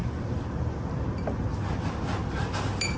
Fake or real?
real